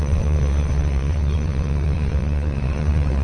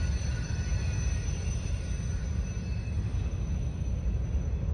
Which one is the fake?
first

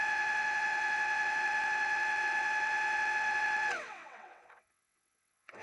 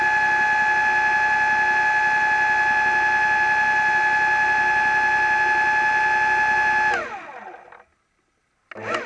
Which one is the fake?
first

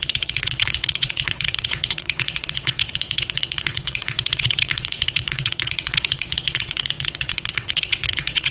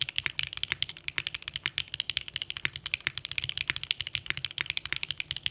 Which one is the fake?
first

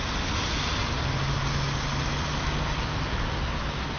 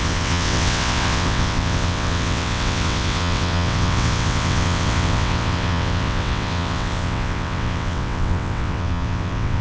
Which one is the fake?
second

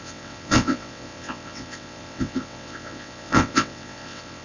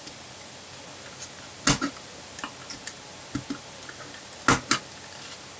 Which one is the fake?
first